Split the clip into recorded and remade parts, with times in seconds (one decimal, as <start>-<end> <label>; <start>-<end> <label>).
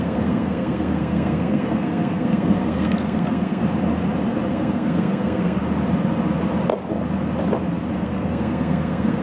0.0-3.6 remade; 3.6-4.5 recorded; 4.5-5.6 remade; 5.6-7.9 recorded; 7.9-9.2 remade